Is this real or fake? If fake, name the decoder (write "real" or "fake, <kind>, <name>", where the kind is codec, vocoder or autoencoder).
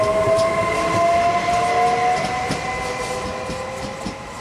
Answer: real